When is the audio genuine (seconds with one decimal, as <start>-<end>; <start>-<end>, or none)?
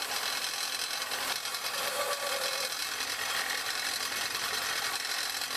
0.0-2.8